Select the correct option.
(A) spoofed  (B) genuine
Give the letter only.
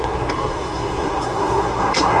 A